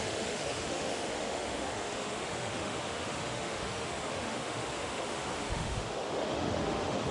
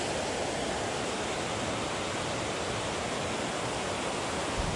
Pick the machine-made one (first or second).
first